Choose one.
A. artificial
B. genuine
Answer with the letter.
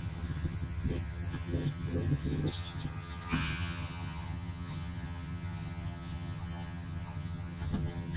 A